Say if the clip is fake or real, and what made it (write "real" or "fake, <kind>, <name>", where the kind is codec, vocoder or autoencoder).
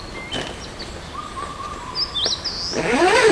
real